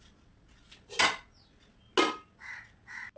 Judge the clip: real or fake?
real